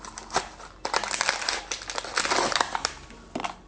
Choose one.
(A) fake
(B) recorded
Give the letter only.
B